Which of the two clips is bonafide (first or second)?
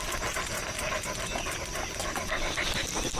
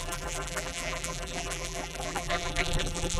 first